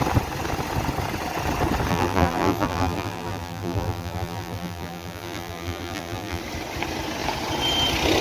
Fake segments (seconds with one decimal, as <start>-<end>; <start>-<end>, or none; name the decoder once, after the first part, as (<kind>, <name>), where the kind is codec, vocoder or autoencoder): 1.9-6.4 (vocoder, BigVGAN v2)